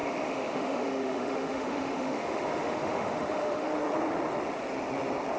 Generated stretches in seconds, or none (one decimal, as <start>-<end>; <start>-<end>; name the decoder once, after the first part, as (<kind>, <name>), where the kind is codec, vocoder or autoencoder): 0.0-3.7 (autoencoder, DAC-VAE)